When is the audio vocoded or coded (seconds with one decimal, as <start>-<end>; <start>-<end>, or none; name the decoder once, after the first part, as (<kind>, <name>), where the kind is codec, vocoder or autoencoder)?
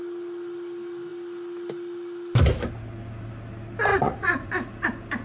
3.9-4.5 (vocoder, Vocos)